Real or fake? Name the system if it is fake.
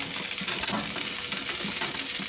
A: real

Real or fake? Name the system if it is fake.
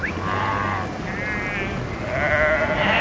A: real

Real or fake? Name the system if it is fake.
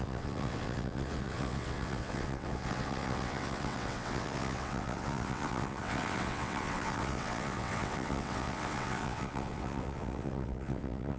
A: fake, vocoder, WaveNeXt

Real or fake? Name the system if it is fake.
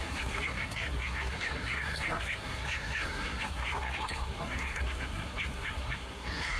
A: fake, codec, SNAC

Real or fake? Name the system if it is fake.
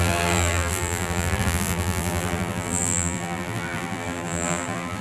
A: fake, vocoder, BigVGAN v2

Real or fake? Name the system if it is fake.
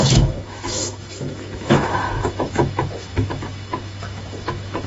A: fake, autoencoder, DAC-VAE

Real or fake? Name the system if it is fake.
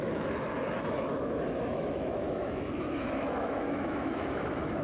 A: fake, autoencoder, DAC-VAE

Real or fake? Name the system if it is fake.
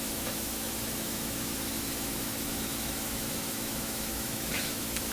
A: fake, autoencoder, DAC-VAE